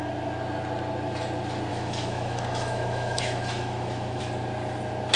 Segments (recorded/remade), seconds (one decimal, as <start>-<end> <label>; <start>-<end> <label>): 0.0-1.7 recorded; 1.7-4.2 remade; 4.2-5.2 recorded